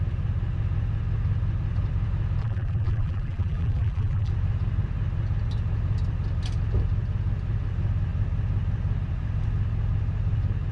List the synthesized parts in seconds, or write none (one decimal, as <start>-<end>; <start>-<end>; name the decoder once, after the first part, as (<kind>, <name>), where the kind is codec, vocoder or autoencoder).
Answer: 2.4-4.3 (vocoder, BigVGAN v2)